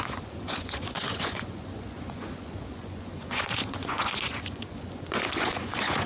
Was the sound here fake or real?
fake